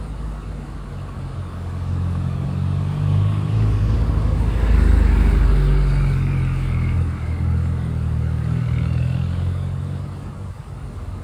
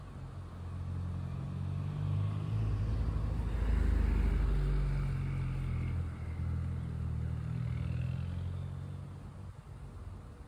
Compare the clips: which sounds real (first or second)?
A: second